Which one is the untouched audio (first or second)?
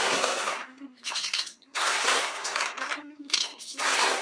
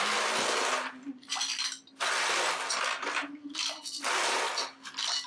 second